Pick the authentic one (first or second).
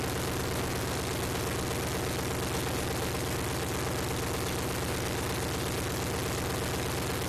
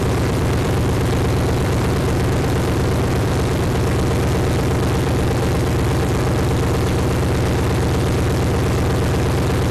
first